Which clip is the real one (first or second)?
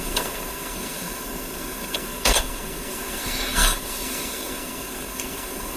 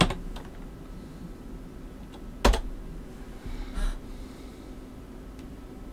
second